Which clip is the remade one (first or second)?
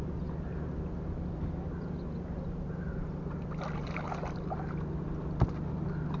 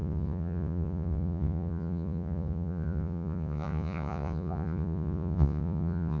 second